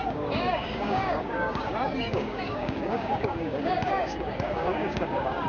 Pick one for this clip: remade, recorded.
remade